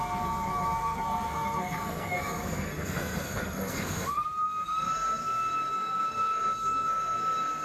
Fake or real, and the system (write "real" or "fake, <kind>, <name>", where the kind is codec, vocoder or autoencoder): fake, codec, SNAC